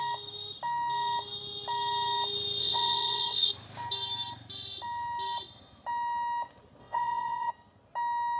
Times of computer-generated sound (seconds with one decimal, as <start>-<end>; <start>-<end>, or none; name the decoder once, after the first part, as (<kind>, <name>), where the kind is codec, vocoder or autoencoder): 2.6-3.5 (vocoder, WaveNeXt); 6.8-7.5